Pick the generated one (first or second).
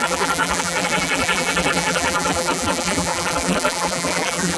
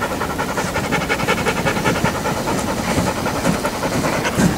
first